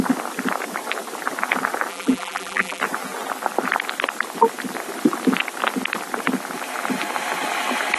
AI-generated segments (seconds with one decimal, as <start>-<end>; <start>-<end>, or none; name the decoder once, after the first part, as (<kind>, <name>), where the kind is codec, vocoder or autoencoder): 1.9-2.8 (vocoder, BigVGAN v2)